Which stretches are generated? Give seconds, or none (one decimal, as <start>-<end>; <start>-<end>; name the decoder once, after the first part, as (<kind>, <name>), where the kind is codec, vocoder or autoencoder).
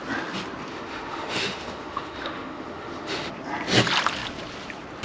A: 0.7-3.3 (autoencoder, DAC-VAE)